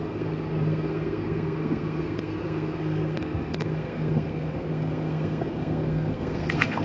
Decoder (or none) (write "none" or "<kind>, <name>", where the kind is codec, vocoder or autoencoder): codec, SNAC